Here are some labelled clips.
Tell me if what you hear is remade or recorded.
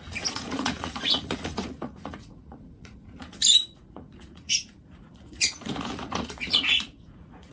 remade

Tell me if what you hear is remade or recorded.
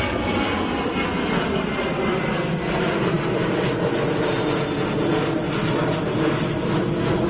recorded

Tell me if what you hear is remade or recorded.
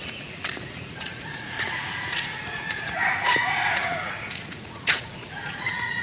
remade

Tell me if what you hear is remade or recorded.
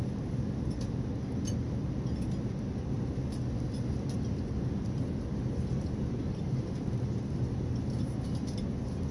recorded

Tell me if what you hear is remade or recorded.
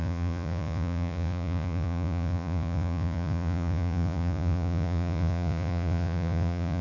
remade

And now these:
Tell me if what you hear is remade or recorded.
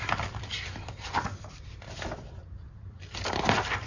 recorded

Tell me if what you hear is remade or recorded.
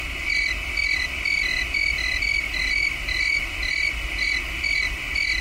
recorded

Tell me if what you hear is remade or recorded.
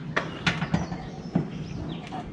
recorded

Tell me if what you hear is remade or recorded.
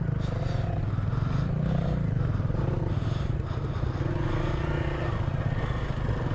recorded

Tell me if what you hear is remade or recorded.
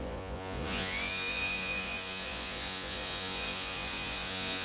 remade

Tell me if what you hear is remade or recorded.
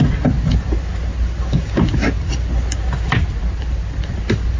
recorded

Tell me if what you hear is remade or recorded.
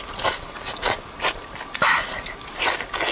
recorded